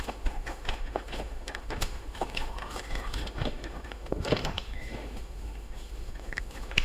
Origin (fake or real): fake